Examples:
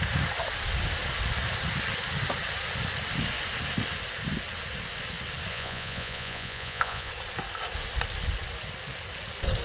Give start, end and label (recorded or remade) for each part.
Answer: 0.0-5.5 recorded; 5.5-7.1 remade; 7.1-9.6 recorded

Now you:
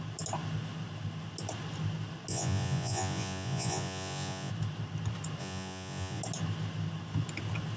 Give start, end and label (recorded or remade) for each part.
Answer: 0.0-2.3 recorded; 2.3-4.5 remade; 4.5-5.4 recorded; 5.4-6.2 remade; 6.2-7.8 recorded

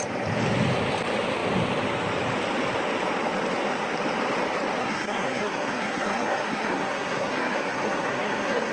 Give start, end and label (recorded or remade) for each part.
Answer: 0.0-4.8 recorded; 4.8-8.7 remade

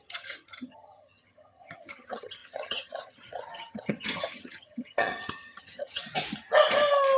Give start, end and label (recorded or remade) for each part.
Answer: 0.0-6.0 remade; 6.0-7.2 recorded

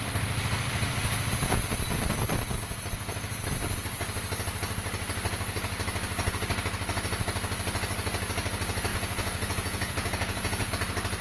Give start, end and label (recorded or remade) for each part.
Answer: 0.0-8.9 recorded; 8.9-10.7 remade; 10.7-11.2 recorded